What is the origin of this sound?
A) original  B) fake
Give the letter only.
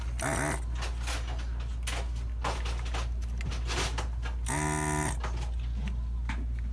A